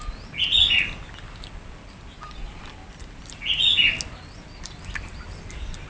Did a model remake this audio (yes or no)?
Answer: no